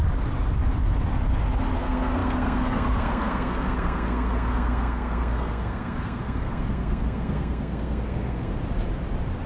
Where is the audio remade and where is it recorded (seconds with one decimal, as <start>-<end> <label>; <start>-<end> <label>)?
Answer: 0.0-1.8 recorded; 1.8-8.5 remade; 8.5-9.5 recorded